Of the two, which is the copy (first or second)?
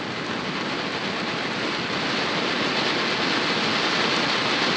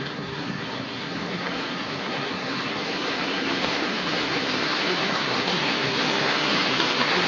second